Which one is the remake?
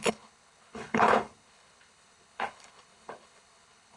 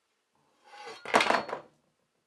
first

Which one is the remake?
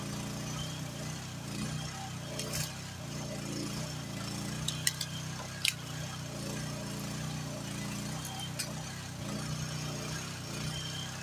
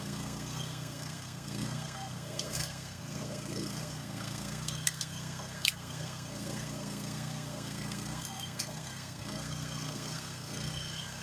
second